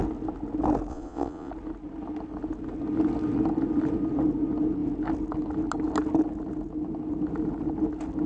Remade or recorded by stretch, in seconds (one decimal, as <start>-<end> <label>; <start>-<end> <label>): 0.0-0.9 recorded; 0.9-1.5 remade; 1.5-8.3 recorded